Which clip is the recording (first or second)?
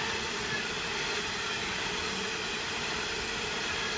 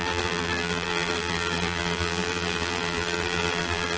first